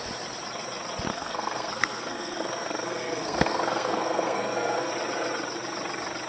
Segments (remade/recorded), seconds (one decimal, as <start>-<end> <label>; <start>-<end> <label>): 0.0-1.1 recorded; 1.1-4.9 remade; 4.9-6.3 recorded